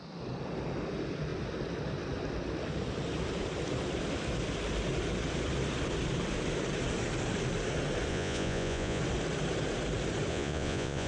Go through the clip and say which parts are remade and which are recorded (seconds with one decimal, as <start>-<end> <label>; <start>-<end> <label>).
0.0-8.1 recorded; 8.1-9.0 remade; 9.0-10.3 recorded; 10.3-11.1 remade